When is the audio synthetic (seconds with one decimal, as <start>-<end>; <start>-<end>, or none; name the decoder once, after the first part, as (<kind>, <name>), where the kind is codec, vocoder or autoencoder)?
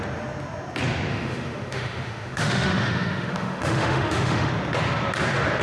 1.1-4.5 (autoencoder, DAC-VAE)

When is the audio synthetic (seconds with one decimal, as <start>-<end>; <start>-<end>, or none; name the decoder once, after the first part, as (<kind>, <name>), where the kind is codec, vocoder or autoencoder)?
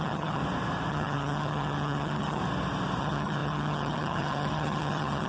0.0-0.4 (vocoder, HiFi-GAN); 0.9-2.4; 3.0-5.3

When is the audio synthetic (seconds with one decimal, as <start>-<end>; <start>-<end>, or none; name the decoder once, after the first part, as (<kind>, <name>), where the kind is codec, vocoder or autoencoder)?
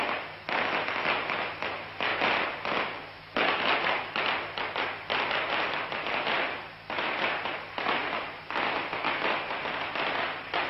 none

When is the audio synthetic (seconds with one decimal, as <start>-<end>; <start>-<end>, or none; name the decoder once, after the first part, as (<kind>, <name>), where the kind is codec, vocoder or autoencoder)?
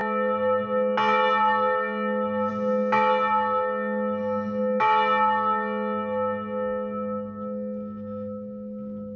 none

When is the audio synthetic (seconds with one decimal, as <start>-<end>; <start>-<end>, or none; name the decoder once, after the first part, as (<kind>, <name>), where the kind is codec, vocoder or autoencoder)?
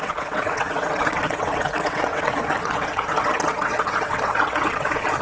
0.0-5.2 (vocoder, WaveNeXt)